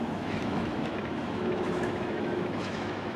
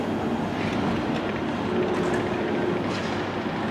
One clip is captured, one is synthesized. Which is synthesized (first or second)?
first